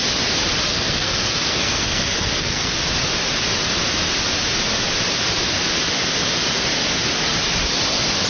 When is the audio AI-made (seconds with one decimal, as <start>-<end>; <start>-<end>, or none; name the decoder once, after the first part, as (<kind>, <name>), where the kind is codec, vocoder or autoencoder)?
0.7-2.8 (codec, SNAC)